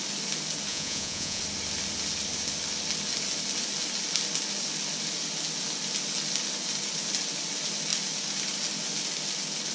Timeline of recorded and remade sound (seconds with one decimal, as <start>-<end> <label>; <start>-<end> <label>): 0.0-0.7 recorded; 0.7-1.4 remade; 1.4-9.7 recorded